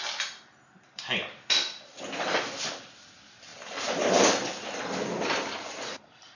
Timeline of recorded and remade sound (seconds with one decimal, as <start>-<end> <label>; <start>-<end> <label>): 0.0-6.4 recorded